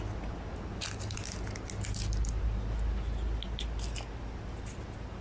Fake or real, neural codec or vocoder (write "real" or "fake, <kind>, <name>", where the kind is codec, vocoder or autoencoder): real